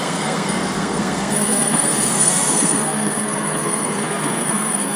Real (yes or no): no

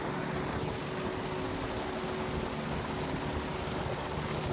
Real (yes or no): yes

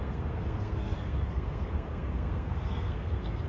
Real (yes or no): no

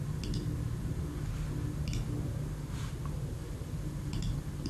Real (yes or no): yes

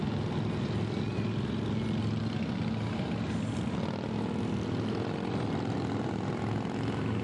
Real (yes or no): yes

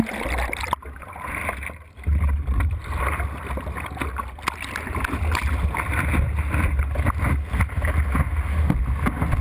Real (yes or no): yes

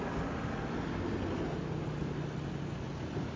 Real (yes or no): yes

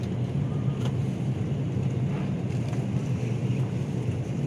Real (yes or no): yes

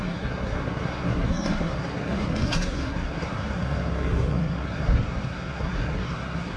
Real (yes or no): no